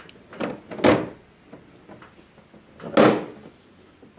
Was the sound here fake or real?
real